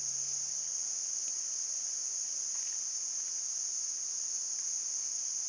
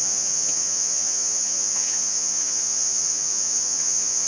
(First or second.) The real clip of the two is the first